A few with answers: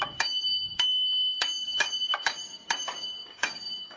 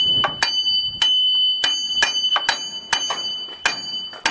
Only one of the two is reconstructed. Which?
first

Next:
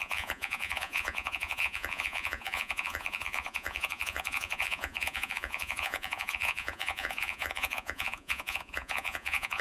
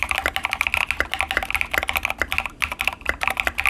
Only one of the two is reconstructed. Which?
first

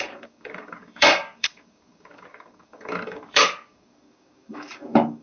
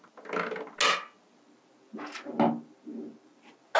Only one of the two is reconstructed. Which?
first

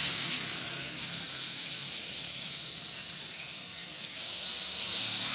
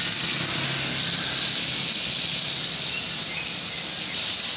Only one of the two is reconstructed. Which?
first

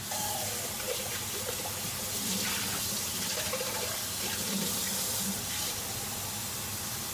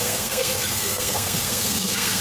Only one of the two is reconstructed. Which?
second